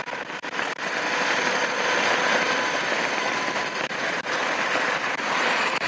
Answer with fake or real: real